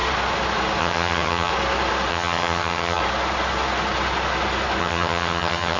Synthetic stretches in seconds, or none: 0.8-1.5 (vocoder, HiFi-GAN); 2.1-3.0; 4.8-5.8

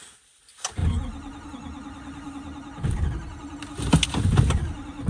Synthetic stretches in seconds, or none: none

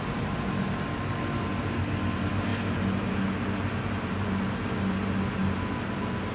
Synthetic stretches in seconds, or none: none